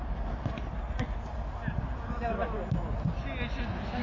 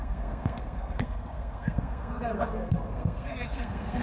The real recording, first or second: first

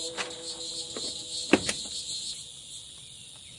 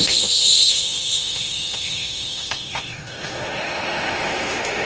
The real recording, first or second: first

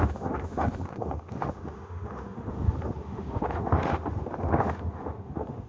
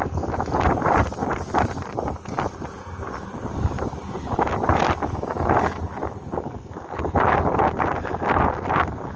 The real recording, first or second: second